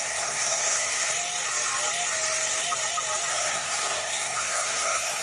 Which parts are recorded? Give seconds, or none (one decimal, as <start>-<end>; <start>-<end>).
1.1-3.3